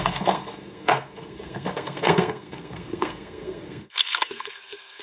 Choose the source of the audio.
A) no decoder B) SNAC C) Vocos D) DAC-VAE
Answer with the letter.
B